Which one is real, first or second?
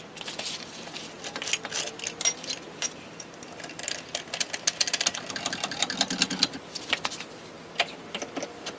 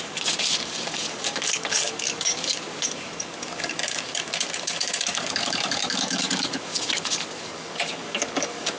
first